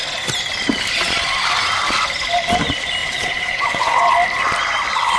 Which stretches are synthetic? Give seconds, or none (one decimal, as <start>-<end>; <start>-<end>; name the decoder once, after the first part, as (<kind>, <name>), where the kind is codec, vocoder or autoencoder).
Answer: 3.0-4.1 (vocoder, WaveNeXt)